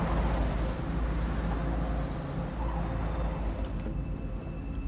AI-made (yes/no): no